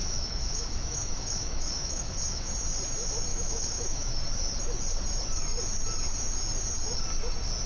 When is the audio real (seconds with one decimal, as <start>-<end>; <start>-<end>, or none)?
2.5-3.3; 4.2-7.7